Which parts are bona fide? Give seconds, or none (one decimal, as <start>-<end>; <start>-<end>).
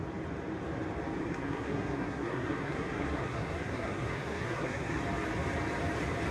0.0-1.2; 5.0-6.3